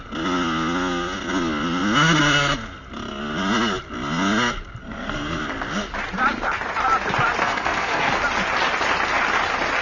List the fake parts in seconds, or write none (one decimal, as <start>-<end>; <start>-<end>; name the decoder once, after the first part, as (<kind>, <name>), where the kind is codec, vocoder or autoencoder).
4.8-5.4 (codec, SNAC); 7.4-8.1